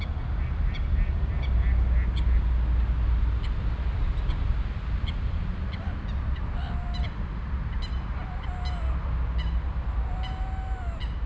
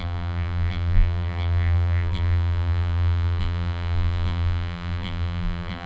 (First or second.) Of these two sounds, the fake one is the second